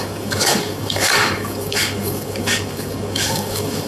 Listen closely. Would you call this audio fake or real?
fake